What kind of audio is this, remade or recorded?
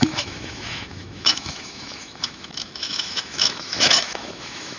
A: remade